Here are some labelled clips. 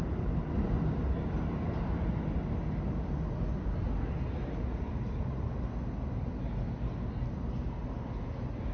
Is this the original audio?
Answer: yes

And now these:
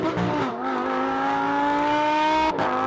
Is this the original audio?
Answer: no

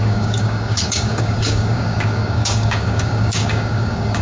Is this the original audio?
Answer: no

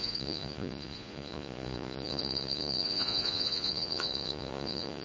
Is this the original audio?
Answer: no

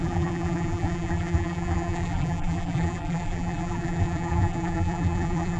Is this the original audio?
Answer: no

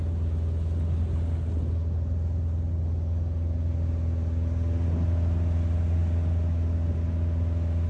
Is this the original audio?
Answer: yes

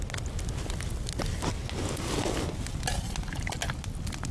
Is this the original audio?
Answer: yes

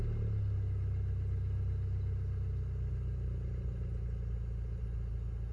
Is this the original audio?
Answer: yes